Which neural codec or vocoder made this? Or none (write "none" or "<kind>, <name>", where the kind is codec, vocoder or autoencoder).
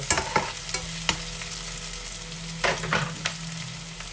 none